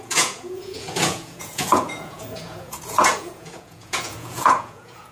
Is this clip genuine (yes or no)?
no